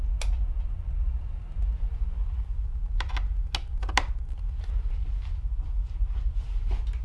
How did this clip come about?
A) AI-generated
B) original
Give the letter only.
B